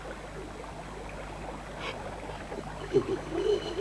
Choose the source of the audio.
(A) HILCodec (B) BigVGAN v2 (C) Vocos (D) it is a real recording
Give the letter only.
D